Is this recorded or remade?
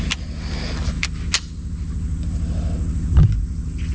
recorded